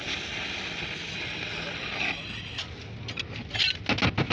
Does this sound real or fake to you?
real